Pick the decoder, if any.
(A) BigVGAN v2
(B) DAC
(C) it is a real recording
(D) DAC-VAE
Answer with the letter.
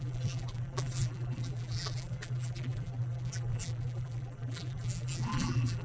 A